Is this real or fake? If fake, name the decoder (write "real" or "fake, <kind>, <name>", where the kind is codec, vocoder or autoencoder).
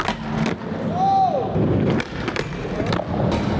real